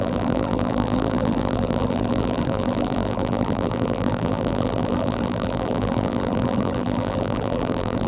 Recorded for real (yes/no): no